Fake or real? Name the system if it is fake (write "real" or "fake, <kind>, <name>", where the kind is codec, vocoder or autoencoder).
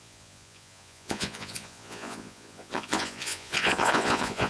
fake, vocoder, Vocos